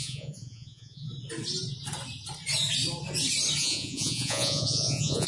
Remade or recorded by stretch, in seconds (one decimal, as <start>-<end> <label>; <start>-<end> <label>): 0.0-1.1 remade; 1.1-3.6 recorded; 3.6-5.3 remade